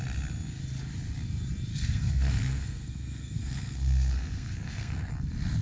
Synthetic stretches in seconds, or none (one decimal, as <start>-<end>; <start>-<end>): 1.7-5.1